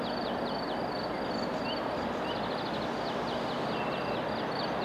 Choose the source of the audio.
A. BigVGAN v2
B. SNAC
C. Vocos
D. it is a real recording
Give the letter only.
D